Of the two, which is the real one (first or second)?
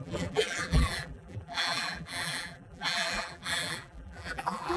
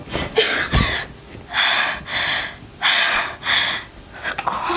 second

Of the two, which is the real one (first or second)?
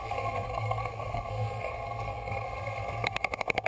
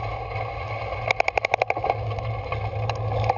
second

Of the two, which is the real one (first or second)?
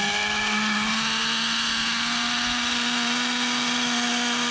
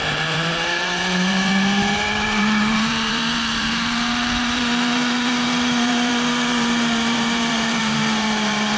first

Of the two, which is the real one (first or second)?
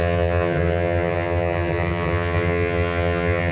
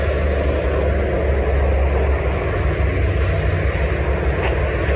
second